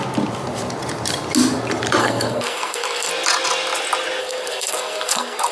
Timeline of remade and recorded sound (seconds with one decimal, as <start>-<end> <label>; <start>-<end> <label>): 0.0-2.0 recorded; 2.0-3.1 remade; 3.1-4.2 recorded; 4.2-5.5 remade